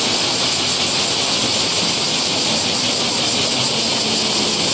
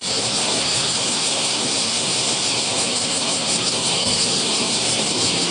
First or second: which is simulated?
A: second